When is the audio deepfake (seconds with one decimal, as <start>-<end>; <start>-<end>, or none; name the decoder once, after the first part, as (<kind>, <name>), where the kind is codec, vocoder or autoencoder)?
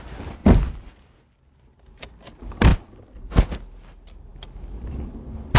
0.4-0.9 (vocoder, BigVGAN v2)